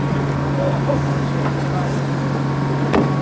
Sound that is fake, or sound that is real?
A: real